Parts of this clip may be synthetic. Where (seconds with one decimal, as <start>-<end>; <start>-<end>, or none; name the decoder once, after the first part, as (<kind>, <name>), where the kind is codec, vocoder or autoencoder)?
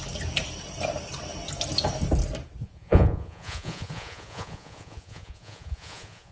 2.6-6.3 (vocoder, Vocos)